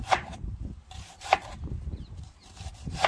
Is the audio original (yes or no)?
no